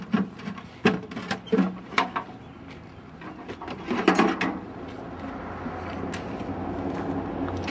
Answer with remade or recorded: recorded